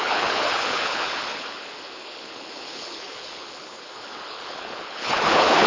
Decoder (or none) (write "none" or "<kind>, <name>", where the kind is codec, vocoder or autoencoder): codec, HILCodec